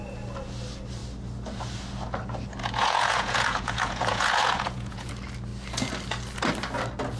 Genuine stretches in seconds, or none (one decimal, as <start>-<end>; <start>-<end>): 0.0-2.6; 5.1-7.2